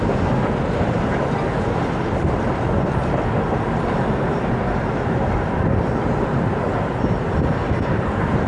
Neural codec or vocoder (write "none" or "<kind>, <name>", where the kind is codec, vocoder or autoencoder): vocoder, BigVGAN v2